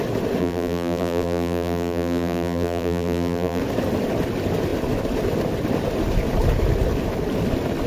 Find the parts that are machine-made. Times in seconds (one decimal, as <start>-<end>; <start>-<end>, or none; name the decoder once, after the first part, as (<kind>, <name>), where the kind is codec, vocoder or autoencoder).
0.4-3.6 (vocoder, BigVGAN v2)